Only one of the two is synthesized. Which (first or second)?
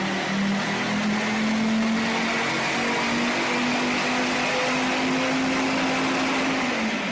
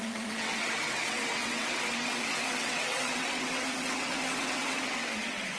second